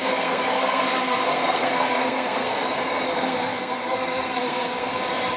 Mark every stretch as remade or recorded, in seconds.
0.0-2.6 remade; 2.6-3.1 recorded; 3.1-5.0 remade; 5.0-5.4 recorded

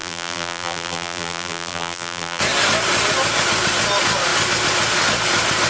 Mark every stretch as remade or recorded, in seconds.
0.0-2.4 remade; 2.4-5.7 recorded

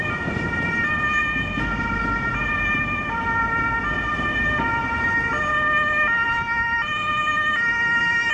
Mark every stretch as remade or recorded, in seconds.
0.0-8.3 recorded

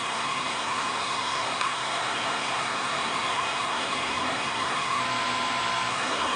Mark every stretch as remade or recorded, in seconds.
0.0-5.0 remade; 5.0-5.9 recorded; 5.9-6.4 remade

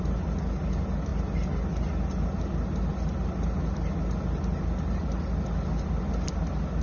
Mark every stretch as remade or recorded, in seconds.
0.0-6.8 recorded

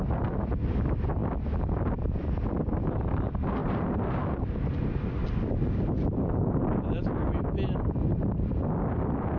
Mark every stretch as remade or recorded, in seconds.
0.0-3.6 recorded; 3.6-7.2 remade; 7.2-9.4 recorded

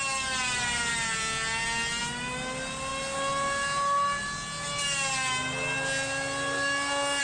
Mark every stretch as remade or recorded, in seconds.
0.0-7.2 recorded